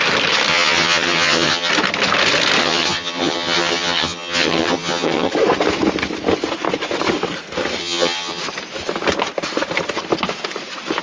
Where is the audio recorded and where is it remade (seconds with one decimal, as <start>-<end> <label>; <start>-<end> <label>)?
0.0-0.5 recorded; 0.5-1.7 remade; 1.7-2.6 recorded; 2.6-5.3 remade; 5.3-7.8 recorded; 7.8-8.4 remade; 8.4-11.0 recorded